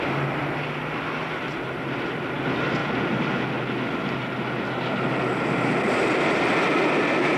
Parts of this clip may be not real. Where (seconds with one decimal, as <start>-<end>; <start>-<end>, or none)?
none